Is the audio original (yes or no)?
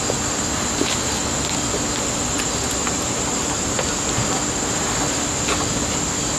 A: yes